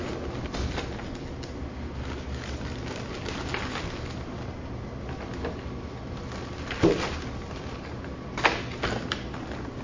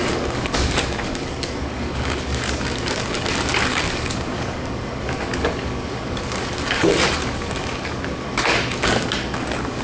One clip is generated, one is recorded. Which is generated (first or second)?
second